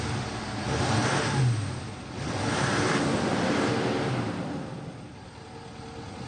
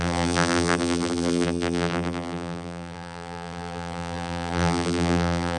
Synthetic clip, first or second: second